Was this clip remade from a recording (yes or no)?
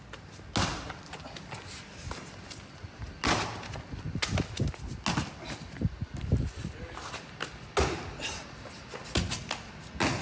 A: no